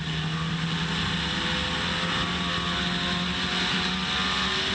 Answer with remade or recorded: recorded